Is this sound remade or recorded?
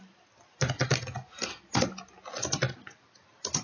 recorded